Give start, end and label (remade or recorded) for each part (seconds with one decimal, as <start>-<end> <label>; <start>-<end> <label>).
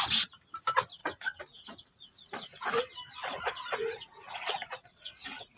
0.0-1.0 recorded; 1.0-2.8 remade; 2.8-3.2 recorded; 3.2-5.6 remade